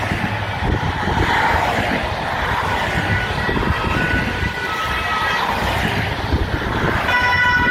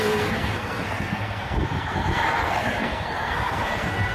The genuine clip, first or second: first